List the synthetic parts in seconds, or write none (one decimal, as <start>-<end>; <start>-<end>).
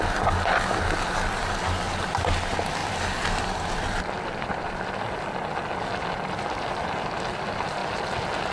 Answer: none